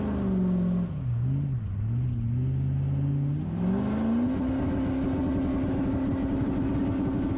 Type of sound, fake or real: real